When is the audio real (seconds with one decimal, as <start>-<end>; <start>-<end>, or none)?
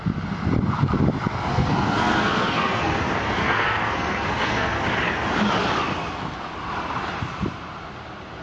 0.0-1.5; 3.0-3.4; 4.8-8.4